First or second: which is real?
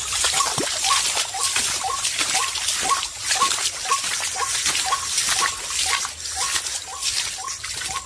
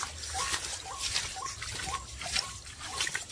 first